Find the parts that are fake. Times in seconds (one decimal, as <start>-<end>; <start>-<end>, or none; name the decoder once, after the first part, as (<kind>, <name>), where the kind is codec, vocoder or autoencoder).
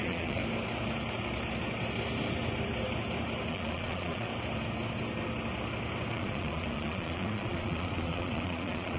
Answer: 0.0-0.4 (vocoder, Vocos); 3.5-4.3; 6.1-9.0